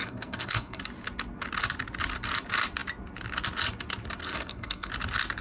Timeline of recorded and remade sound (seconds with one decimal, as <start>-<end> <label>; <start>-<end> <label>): 0.0-0.8 remade; 0.8-4.2 recorded; 4.2-4.9 remade; 4.9-5.4 recorded